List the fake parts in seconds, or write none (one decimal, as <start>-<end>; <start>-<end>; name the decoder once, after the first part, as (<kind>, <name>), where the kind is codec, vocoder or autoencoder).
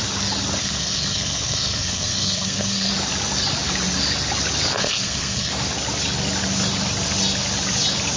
0.6-2.9 (codec, SNAC); 4.8-5.5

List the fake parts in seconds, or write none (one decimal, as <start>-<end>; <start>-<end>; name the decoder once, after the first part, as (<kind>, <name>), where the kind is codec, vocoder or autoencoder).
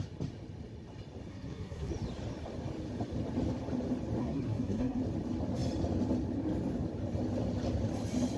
1.3-1.9 (codec, SNAC); 4.2-5.0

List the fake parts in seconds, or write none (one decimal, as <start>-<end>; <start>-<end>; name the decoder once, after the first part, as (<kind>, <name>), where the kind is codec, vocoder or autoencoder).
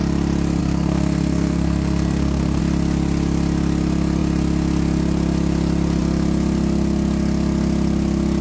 0.6-2.6 (codec, SNAC)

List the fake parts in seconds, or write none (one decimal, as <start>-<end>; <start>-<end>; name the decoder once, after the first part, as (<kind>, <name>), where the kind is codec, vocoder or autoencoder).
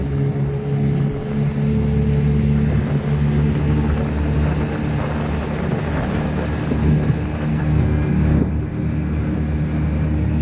7.5-8.1 (codec, SNAC)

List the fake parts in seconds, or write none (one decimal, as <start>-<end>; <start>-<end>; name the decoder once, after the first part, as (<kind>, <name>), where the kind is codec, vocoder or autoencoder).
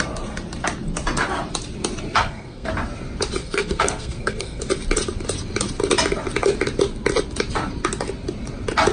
2.2-2.7 (codec, SNAC); 3.4-4.6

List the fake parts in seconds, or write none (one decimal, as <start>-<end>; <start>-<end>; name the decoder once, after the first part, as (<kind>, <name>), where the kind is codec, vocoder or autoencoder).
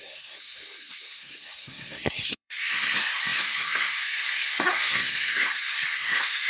0.0-6.5 (codec, SNAC)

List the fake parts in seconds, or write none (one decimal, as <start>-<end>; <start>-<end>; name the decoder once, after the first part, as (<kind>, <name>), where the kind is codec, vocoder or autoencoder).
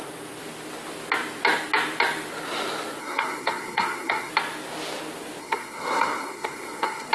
3.0-4.3 (codec, SNAC); 5.4-7.1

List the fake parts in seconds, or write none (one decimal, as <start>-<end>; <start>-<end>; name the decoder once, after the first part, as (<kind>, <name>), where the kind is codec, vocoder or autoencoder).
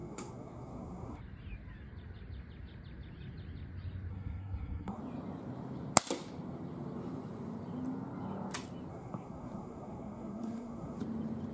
0.0-1.2 (codec, SNAC); 4.1-5.0; 8.9-11.0